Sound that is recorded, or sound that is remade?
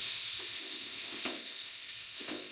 remade